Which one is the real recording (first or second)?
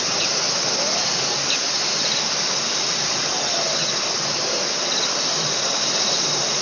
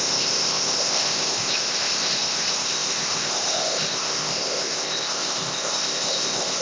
first